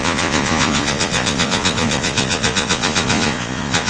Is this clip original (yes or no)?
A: no